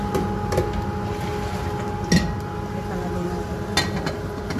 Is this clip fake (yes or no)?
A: no